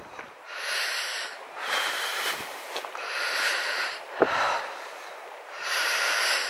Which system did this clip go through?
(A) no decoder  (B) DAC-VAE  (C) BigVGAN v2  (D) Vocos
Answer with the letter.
C